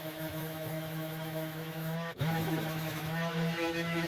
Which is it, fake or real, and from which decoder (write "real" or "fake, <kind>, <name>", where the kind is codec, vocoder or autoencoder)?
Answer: fake, autoencoder, DAC-VAE